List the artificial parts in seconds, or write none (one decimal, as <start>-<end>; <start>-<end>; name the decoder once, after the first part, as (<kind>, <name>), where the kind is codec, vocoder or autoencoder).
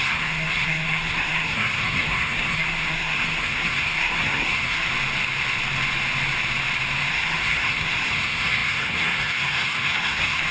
0.0-4.9 (codec, SNAC); 7.1-10.5